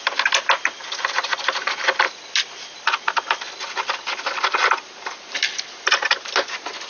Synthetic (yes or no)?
no